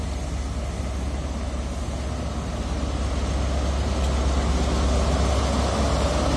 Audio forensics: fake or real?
real